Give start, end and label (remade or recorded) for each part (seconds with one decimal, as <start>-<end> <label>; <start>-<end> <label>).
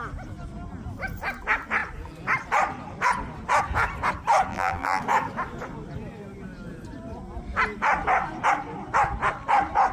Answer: 0.0-4.5 recorded; 4.5-5.0 remade; 5.0-9.9 recorded